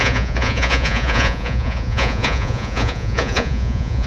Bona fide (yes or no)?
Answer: no